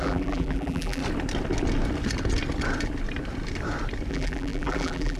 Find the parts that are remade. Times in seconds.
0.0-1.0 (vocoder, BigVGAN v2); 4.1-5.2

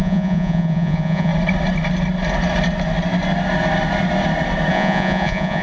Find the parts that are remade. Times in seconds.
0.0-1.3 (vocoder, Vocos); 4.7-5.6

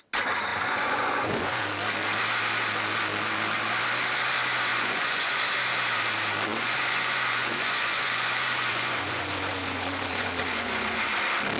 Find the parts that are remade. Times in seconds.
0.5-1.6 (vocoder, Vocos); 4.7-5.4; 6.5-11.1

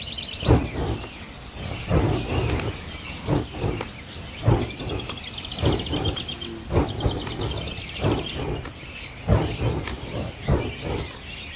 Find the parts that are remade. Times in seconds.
none